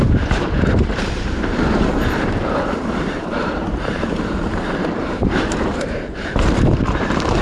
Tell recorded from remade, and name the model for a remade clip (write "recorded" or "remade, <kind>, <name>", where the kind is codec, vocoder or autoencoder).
remade, vocoder, BigVGAN v2